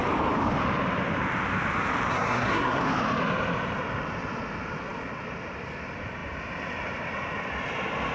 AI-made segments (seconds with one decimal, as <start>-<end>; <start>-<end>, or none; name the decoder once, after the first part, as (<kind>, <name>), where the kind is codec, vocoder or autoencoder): 2.1-2.8 (codec, SNAC)